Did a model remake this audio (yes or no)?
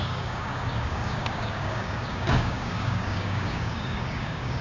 yes